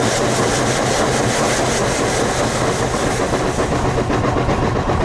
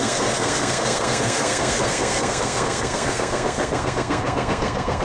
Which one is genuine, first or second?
first